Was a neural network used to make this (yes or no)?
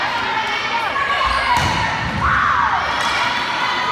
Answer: no